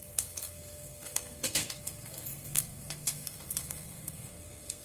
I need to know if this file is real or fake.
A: fake